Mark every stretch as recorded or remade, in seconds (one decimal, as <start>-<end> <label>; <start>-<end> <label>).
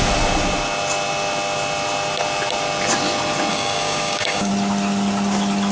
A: 0.0-3.5 recorded; 3.5-4.5 remade; 4.5-5.7 recorded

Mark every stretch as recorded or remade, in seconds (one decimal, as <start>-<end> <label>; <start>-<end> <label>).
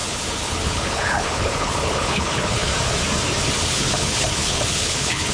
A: 0.0-2.7 remade; 2.7-3.6 recorded; 3.6-5.3 remade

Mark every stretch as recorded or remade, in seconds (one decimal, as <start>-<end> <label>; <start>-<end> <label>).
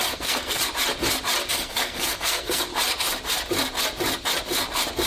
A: 0.0-0.6 remade; 0.6-1.5 recorded; 1.5-2.7 remade; 2.7-5.1 recorded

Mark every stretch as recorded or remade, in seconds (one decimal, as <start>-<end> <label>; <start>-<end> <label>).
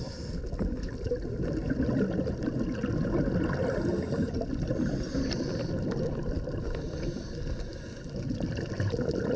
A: 0.0-1.6 remade; 1.6-3.9 recorded; 3.9-9.4 remade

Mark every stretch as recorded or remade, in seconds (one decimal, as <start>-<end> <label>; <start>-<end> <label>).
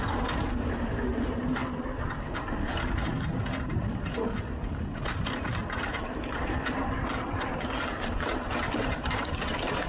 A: 0.0-9.9 remade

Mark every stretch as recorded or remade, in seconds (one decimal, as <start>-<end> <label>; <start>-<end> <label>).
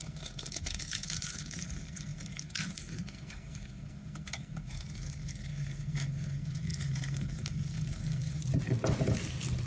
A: 0.0-8.4 remade; 8.4-9.7 recorded